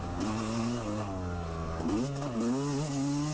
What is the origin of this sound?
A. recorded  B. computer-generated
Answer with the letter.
A